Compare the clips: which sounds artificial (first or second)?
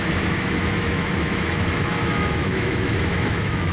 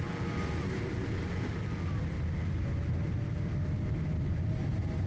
first